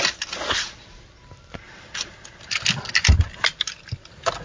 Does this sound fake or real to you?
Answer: real